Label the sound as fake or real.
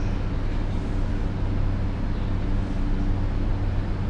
real